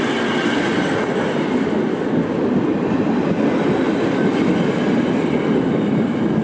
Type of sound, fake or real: real